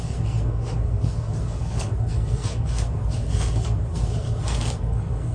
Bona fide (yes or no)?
no